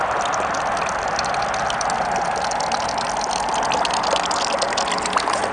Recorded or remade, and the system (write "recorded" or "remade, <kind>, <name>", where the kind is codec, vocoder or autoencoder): recorded